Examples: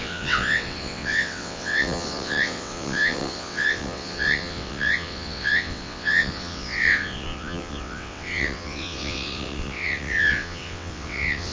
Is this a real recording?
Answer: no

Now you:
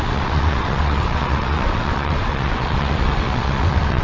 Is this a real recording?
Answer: no